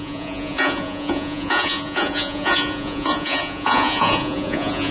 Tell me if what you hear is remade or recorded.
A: remade